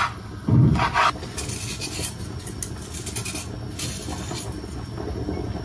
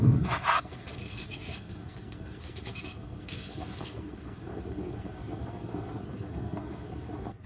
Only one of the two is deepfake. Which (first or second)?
second